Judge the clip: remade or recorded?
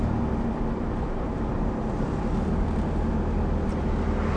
recorded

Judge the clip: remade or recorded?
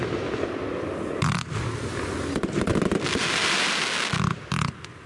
recorded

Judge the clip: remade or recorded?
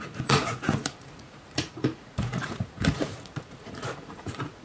remade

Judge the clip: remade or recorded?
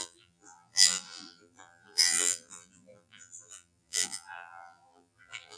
remade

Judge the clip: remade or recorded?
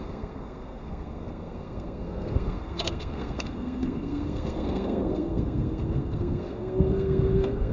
remade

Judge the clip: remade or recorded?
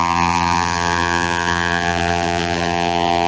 remade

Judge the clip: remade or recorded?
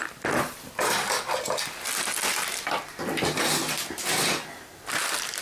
recorded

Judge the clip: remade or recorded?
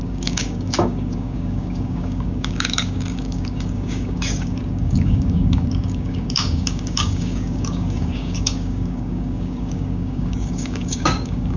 remade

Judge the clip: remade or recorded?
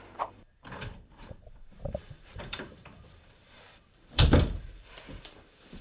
remade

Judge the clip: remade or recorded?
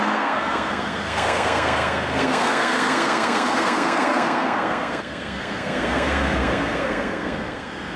remade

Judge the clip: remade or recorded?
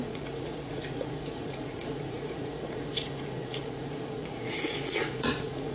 remade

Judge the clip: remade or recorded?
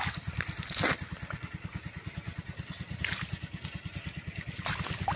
recorded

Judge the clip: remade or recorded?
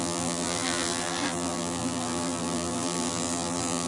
remade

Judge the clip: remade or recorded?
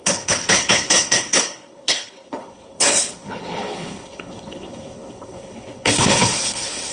remade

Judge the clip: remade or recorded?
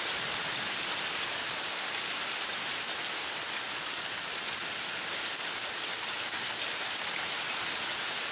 recorded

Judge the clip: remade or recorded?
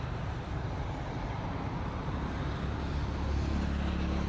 recorded